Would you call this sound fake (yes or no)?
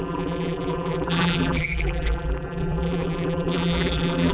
yes